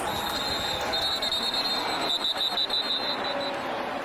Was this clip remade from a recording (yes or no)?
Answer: no